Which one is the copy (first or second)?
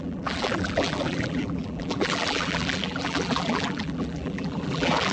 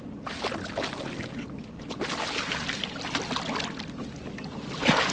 first